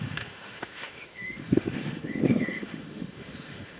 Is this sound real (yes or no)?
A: no